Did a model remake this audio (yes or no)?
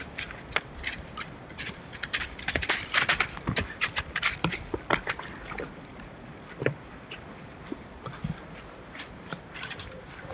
yes